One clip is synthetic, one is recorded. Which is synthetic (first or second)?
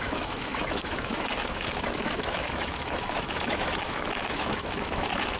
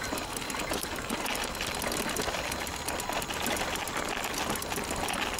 first